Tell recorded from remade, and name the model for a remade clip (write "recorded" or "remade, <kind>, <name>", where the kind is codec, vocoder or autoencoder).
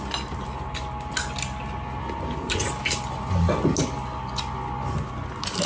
recorded